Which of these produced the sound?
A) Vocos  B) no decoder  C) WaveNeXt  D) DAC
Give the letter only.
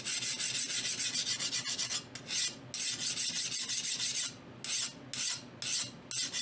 B